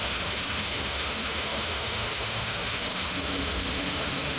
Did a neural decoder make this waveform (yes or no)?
yes